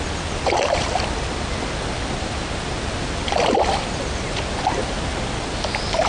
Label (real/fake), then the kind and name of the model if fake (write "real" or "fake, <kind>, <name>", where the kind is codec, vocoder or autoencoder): real